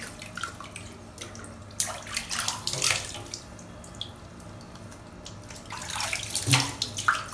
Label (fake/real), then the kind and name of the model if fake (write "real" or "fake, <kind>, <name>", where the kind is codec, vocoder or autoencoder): real